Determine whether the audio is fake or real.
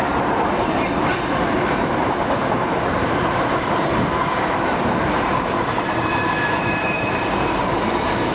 fake